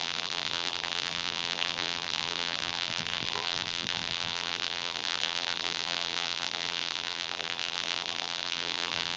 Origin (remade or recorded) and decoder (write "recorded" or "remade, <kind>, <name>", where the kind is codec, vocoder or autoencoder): remade, vocoder, BigVGAN v2